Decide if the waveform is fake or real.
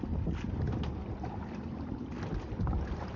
real